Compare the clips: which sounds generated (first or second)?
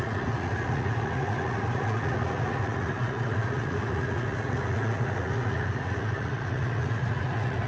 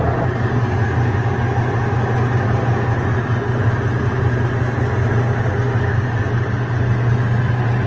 first